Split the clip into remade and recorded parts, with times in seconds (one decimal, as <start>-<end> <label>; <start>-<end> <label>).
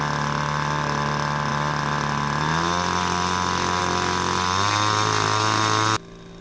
0.0-6.4 recorded